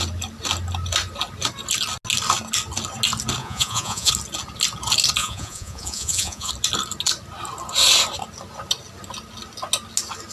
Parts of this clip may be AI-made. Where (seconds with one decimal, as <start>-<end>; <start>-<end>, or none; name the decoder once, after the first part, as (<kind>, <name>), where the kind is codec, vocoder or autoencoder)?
3.4-4.1 (vocoder, Vocos); 5.2-6.5